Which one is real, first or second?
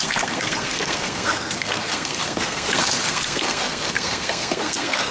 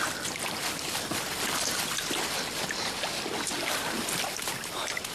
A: second